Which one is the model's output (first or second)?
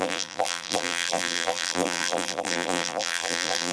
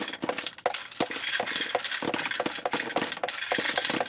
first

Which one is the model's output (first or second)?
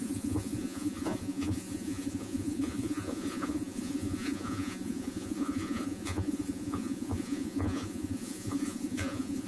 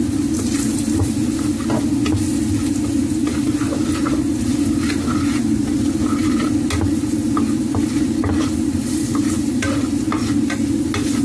first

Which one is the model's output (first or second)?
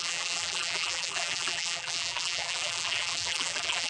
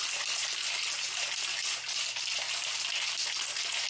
first